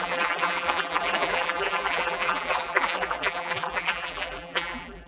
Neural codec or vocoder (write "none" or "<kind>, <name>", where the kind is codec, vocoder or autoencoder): vocoder, BigVGAN v2